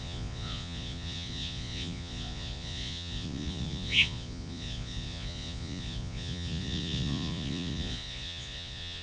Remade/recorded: remade